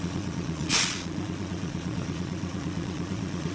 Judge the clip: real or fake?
fake